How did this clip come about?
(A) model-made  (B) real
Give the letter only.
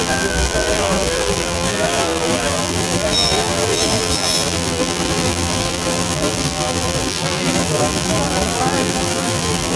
A